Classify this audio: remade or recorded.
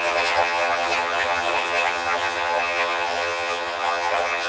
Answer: remade